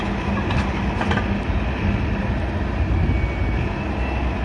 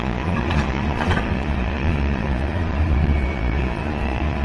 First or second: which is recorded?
first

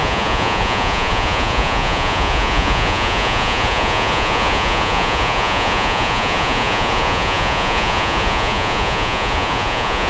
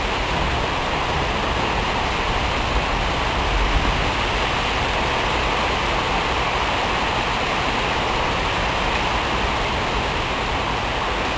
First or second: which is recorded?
second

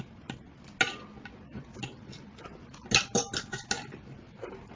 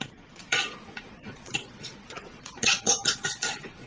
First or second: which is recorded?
first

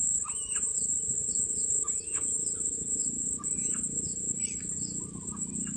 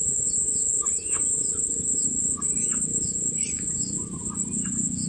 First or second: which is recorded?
first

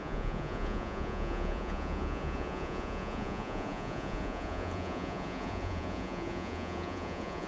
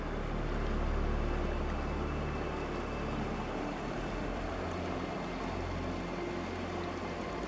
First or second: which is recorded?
second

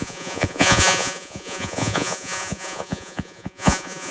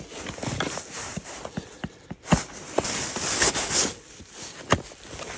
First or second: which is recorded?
second